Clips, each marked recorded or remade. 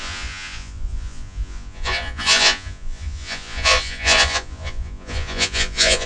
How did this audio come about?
remade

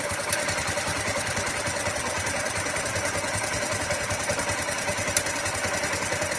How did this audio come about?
remade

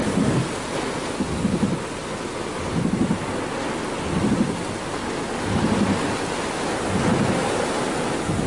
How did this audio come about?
recorded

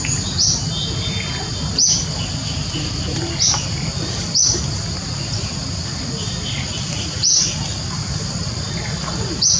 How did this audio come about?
recorded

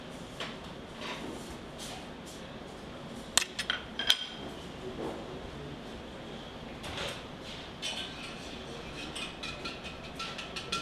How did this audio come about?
recorded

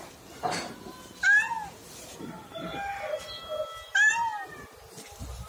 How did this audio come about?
recorded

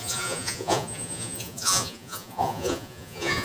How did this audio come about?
remade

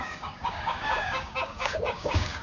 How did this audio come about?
remade